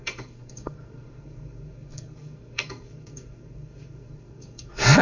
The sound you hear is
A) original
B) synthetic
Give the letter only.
B